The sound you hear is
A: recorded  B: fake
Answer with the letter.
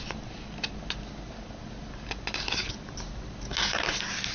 A